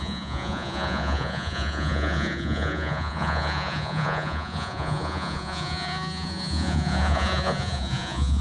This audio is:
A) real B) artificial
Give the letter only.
B